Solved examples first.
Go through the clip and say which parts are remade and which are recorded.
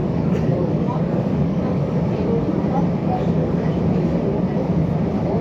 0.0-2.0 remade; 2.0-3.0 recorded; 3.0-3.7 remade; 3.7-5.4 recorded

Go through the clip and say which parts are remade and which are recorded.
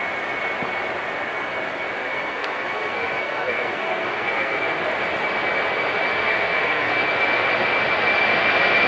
0.0-2.0 recorded; 2.0-4.8 remade; 4.8-6.2 recorded; 6.2-6.9 remade; 6.9-8.9 recorded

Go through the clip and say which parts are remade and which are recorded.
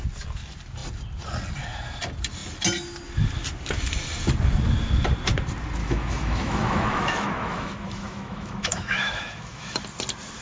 0.0-5.8 recorded; 5.8-9.8 remade; 9.8-10.4 recorded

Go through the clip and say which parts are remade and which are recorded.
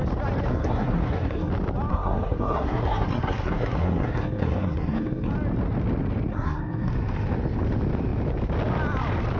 0.0-0.5 recorded; 0.5-1.5 remade; 1.5-1.9 recorded; 1.9-5.3 remade; 5.3-6.3 recorded; 6.3-6.9 remade; 6.9-9.4 recorded